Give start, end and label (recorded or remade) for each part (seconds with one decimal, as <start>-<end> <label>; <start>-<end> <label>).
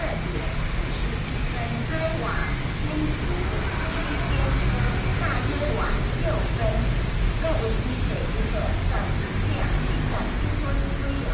0.0-11.3 recorded